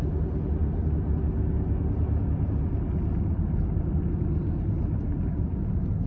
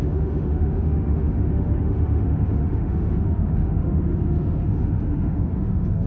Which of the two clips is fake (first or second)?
second